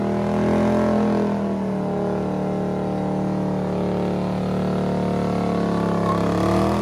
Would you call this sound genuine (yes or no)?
yes